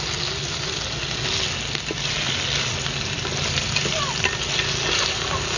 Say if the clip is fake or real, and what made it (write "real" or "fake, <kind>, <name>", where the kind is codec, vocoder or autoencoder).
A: real